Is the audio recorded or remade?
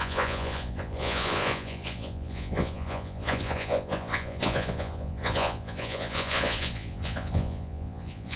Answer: remade